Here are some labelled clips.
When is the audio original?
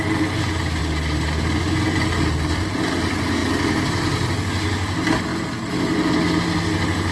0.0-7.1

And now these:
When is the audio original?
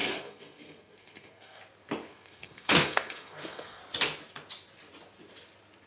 1.6-2.1; 3.8-5.9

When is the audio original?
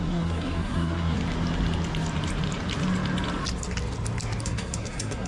1.2-4.4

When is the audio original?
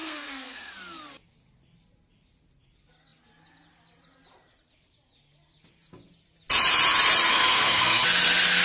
0.7-7.3; 8.0-8.6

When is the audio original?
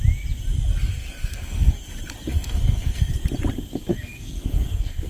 0.0-0.8; 1.9-2.3; 3.1-3.9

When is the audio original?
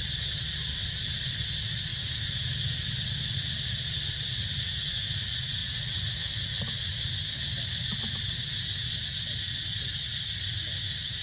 0.0-11.2